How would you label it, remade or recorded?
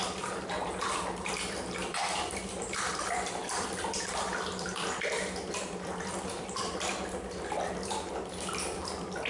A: remade